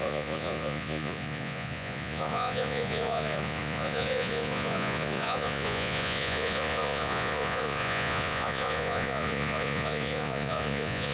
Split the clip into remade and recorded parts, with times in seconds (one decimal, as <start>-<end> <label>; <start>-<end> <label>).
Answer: 0.0-11.1 remade